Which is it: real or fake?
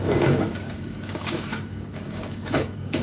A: fake